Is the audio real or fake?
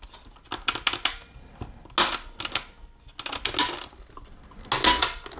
real